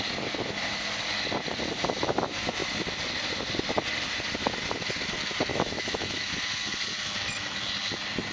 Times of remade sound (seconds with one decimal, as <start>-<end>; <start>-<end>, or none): 5.5-6.2